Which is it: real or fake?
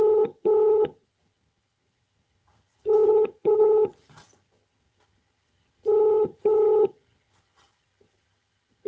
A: fake